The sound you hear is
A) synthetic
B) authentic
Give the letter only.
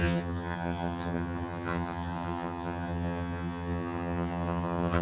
A